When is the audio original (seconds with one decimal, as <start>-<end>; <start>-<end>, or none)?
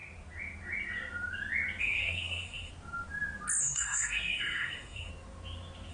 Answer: 0.0-1.8; 2.7-3.6; 5.1-5.9